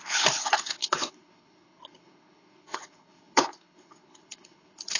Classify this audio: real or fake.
fake